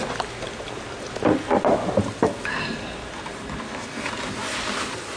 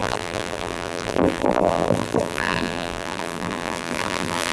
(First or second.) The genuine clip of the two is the first